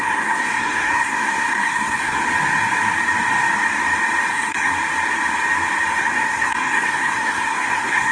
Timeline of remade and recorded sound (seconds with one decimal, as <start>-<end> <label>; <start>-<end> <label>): 0.0-2.2 remade; 2.2-4.3 recorded; 4.3-4.7 remade; 4.7-6.0 recorded; 6.0-8.1 remade